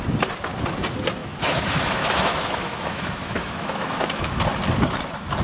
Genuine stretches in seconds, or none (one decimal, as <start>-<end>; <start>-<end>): 0.0-1.2; 4.4-5.4